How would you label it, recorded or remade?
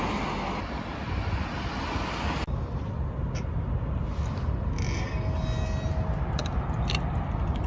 recorded